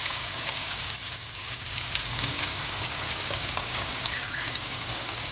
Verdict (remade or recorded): remade